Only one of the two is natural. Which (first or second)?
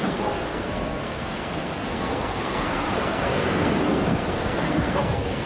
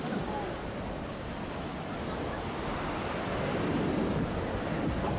second